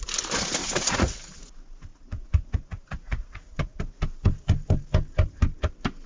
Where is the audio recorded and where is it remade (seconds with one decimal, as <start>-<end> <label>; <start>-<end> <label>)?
0.0-0.6 recorded; 0.6-1.4 remade; 1.4-1.9 recorded; 1.9-3.8 remade; 3.8-6.1 recorded